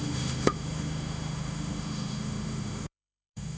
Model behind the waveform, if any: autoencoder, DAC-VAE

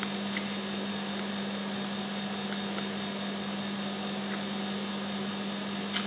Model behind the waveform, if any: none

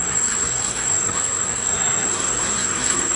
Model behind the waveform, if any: codec, SNAC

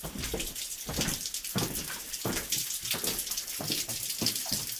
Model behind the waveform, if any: vocoder, BigVGAN v2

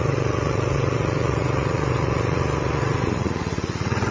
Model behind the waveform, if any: vocoder, Vocos